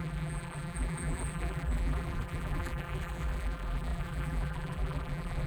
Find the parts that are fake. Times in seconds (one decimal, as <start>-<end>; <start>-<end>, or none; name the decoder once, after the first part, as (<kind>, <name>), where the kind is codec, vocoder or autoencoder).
0.0-5.5 (vocoder, BigVGAN v2)